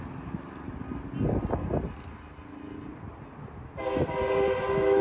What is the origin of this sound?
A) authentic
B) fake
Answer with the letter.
A